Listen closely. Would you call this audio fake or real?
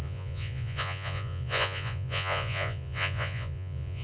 fake